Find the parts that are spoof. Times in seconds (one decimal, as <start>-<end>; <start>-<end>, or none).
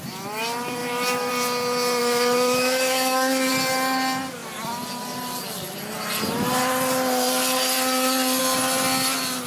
0.8-1.3; 2.0-3.5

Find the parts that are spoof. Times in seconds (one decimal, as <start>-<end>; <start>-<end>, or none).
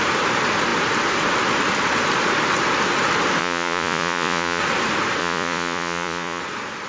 3.4-4.6; 5.2-6.4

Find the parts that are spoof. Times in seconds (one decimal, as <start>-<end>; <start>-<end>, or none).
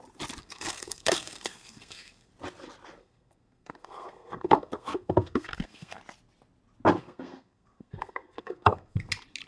0.4-2.3; 3.0-6.0; 7.0-9.1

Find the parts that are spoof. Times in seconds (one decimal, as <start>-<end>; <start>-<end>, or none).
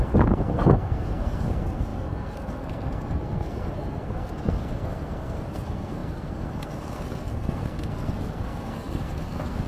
0.0-9.7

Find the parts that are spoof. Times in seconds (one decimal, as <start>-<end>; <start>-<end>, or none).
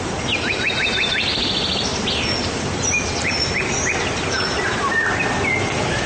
none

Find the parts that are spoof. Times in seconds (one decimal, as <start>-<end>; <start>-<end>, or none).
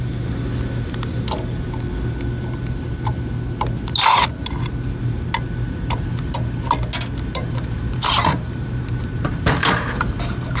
7.4-10.6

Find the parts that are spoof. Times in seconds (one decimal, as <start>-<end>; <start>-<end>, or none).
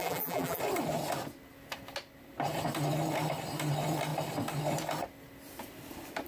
0.0-0.6